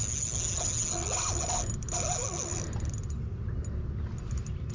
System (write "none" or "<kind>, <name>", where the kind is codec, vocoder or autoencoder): none